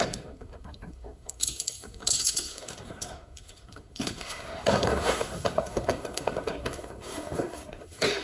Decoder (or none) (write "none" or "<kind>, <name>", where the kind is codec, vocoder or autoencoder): codec, SNAC